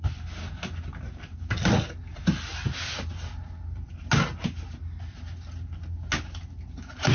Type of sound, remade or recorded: recorded